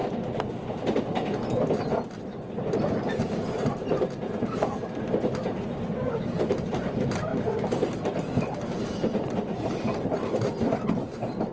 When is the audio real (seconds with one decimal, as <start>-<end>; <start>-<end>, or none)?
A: 0.0-2.7; 7.3-10.6